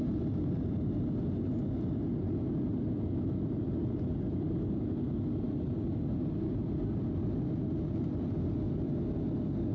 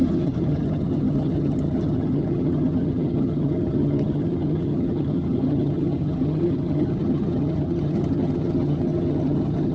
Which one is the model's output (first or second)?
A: second